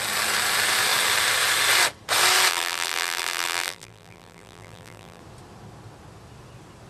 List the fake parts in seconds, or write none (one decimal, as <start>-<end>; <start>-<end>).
2.5-5.2